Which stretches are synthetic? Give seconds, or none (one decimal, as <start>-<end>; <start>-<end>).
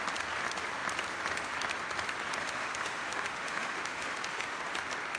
2.4-4.6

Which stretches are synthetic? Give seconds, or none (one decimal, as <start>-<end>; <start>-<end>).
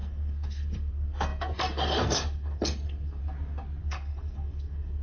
0.0-3.2; 3.8-5.0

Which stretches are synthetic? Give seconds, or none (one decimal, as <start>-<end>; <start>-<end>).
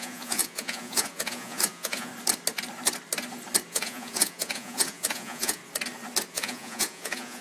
0.0-2.1; 3.7-5.6; 6.3-7.4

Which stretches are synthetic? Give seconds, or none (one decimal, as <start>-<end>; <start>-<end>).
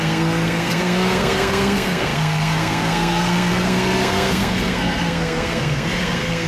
0.0-6.5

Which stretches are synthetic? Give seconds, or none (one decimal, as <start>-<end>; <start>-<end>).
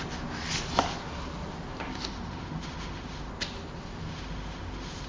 1.9-3.3; 4.1-5.1